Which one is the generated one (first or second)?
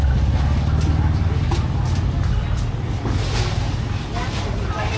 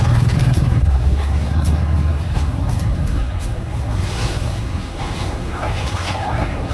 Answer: second